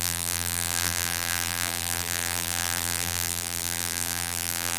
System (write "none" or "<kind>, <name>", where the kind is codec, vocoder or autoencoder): vocoder, BigVGAN v2